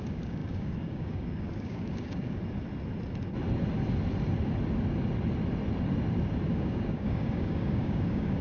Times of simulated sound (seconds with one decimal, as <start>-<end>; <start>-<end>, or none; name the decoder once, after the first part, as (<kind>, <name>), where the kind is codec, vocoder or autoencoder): 0.0-2.4 (codec, DAC); 6.5-8.4